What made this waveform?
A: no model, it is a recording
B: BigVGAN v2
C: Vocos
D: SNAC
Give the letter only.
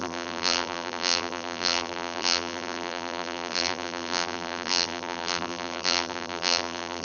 B